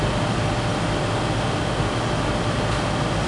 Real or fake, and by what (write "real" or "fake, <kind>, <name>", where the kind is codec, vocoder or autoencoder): real